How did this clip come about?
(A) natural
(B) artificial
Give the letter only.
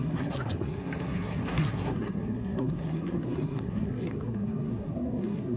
B